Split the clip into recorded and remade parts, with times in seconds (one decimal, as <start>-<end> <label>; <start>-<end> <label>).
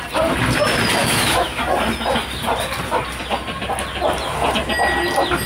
0.0-1.0 recorded; 1.0-1.6 remade; 1.6-5.5 recorded